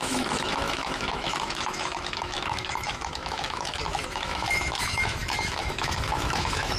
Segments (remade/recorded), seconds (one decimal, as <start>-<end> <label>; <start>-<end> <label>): 0.0-6.8 remade